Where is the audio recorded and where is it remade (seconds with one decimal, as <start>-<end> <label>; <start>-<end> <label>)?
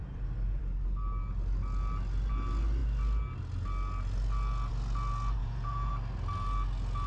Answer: 0.0-5.4 recorded; 5.4-5.9 remade; 5.9-7.1 recorded